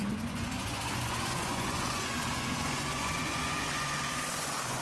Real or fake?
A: fake